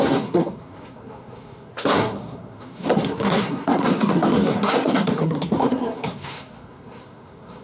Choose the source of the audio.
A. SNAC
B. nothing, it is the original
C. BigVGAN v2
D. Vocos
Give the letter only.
A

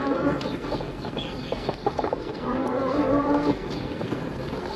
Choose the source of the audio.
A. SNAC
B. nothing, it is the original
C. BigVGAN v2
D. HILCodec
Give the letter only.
A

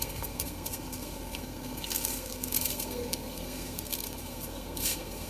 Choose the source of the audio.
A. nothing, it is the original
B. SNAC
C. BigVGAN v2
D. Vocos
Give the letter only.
B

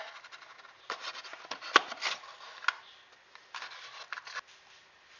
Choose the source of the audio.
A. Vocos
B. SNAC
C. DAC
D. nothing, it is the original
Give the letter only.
D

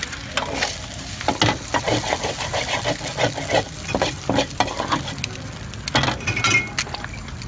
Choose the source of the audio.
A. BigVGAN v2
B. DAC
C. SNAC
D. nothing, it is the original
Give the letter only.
D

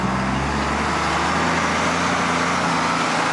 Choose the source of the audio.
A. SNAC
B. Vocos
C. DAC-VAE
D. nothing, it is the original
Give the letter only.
D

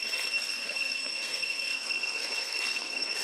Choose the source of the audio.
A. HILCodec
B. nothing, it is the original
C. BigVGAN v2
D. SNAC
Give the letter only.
D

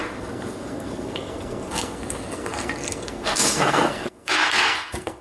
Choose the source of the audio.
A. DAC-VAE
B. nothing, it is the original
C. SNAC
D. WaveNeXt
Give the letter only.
C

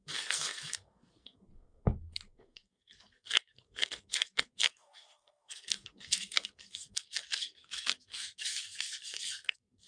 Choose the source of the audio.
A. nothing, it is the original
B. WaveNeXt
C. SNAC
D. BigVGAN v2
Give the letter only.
C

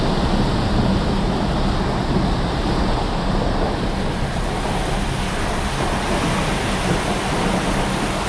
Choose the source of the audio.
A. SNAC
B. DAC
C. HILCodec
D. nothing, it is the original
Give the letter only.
D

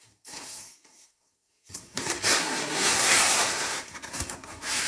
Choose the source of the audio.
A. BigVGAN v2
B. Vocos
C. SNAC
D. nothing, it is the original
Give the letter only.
C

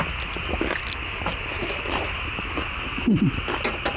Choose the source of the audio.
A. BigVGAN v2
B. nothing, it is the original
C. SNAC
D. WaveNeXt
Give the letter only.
B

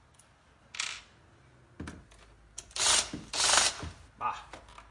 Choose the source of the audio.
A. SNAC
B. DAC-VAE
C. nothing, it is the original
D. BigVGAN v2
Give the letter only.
C